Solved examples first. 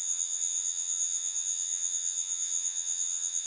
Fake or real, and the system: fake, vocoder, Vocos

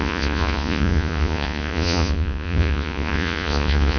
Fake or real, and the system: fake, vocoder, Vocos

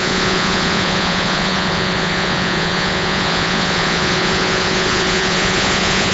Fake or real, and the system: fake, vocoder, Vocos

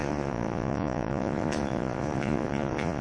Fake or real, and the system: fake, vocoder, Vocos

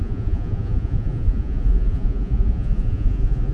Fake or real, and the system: fake, vocoder, Vocos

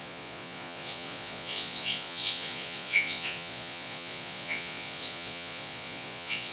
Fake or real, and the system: fake, vocoder, Vocos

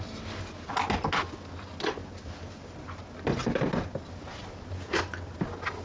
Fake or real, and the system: real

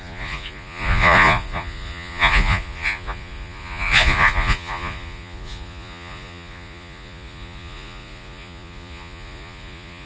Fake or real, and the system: fake, vocoder, Vocos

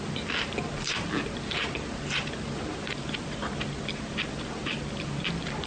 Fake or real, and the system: real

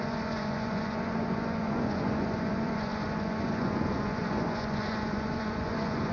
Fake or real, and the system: fake, vocoder, Vocos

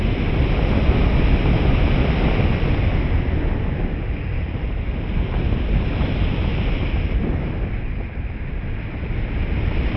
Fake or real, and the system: real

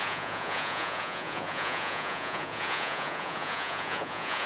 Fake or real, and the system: fake, vocoder, Vocos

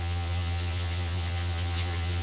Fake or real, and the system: fake, vocoder, Vocos